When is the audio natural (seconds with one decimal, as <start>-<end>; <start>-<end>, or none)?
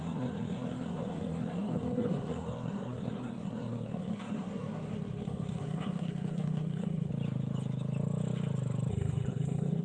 7.1-8.9